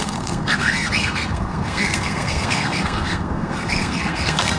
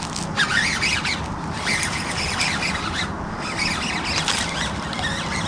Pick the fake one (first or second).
first